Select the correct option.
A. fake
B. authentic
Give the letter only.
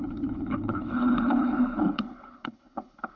A